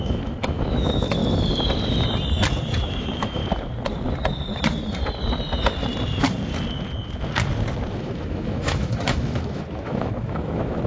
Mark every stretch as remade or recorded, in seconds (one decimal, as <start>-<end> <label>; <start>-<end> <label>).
0.0-1.2 remade; 1.2-2.8 recorded; 2.8-3.4 remade; 3.4-8.0 recorded; 8.0-10.9 remade